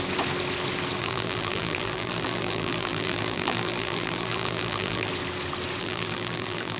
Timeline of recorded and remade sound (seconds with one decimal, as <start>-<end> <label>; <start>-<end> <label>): 0.0-1.0 recorded; 1.0-5.1 remade; 5.1-5.8 recorded; 5.8-6.8 remade